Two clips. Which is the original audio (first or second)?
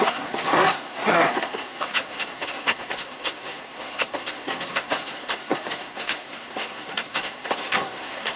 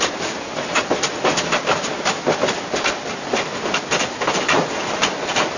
second